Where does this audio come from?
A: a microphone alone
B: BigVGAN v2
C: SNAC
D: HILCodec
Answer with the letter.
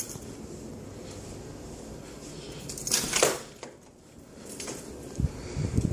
B